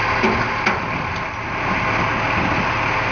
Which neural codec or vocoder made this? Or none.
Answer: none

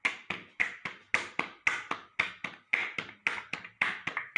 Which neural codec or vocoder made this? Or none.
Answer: none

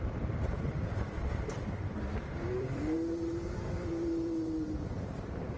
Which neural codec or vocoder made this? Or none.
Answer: vocoder, BigVGAN v2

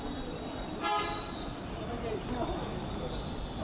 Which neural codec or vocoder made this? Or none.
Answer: none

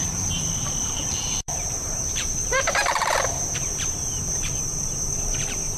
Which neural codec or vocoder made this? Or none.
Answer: vocoder, BigVGAN v2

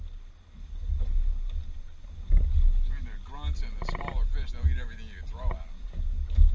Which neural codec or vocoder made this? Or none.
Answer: none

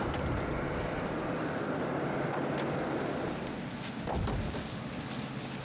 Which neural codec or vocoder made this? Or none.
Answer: none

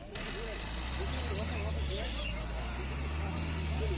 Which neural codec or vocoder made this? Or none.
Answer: none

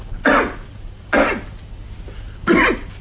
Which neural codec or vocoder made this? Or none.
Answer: none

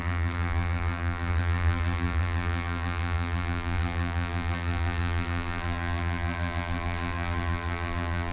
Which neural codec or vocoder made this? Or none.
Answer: vocoder, BigVGAN v2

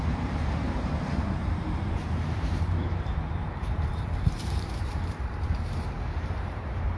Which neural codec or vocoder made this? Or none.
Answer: vocoder, BigVGAN v2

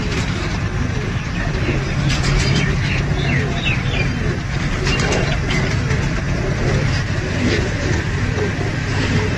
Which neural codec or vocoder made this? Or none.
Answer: vocoder, BigVGAN v2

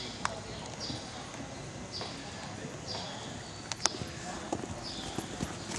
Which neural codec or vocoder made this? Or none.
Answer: none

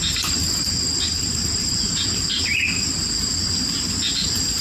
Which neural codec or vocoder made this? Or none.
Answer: vocoder, BigVGAN v2